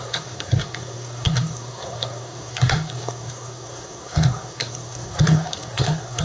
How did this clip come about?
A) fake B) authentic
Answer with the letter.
A